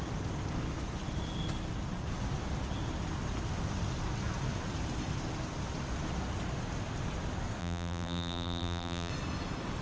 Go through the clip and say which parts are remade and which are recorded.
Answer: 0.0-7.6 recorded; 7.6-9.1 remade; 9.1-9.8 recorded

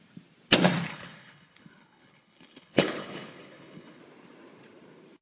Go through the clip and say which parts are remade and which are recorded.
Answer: 0.0-0.9 recorded; 0.9-4.0 remade; 4.0-5.2 recorded